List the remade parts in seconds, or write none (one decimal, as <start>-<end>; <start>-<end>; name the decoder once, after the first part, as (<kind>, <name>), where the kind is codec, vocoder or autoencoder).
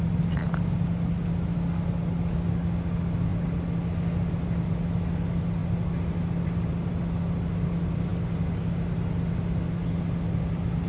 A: none